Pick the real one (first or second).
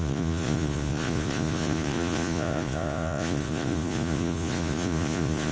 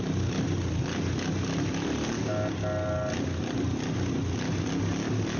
second